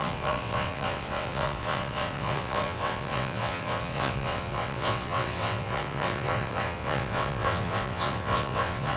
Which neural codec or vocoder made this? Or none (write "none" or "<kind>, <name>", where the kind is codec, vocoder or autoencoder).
vocoder, WaveNeXt